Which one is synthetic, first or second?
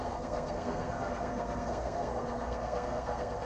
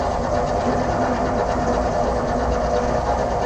first